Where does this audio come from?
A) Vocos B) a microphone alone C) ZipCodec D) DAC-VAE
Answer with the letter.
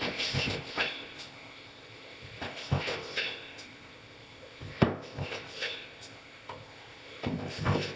C